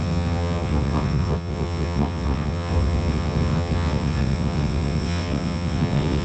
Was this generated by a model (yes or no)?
yes